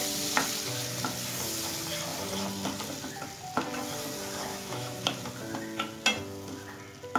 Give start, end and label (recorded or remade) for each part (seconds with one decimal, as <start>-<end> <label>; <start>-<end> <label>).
0.0-4.5 recorded; 4.5-5.0 remade; 5.0-7.2 recorded